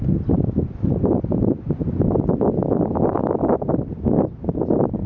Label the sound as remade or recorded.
recorded